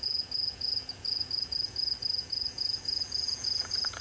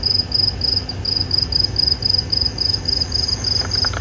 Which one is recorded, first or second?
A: second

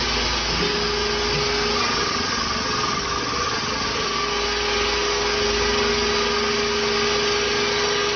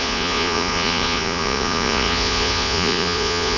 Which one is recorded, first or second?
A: first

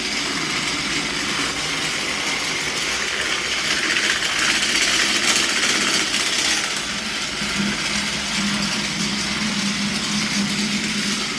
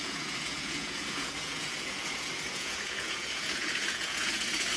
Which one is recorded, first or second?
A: first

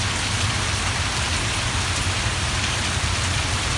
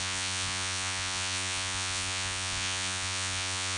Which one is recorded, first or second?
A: first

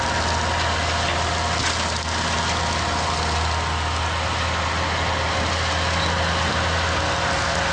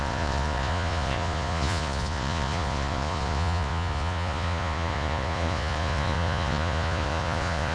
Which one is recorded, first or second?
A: first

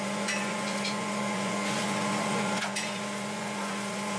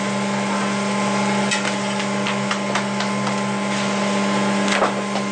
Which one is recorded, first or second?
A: second